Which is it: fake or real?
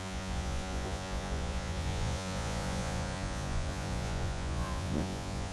fake